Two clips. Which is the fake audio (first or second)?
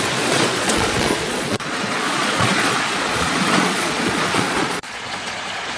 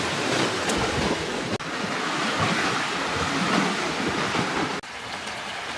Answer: first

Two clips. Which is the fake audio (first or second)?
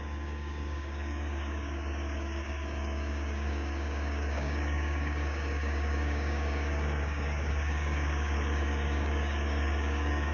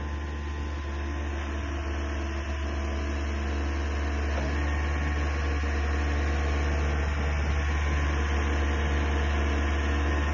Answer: first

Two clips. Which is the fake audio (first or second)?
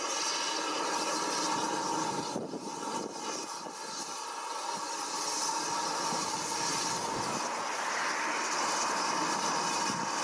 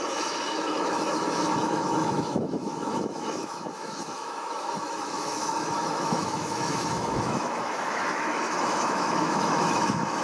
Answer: second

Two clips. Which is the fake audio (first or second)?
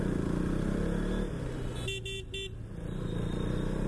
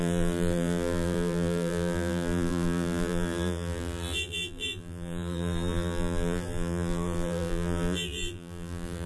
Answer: second